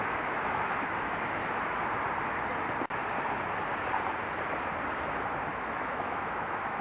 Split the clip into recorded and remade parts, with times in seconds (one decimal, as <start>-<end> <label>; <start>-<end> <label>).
0.0-1.4 remade; 1.4-5.5 recorded; 5.5-6.8 remade